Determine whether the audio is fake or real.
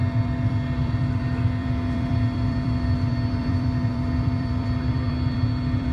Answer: fake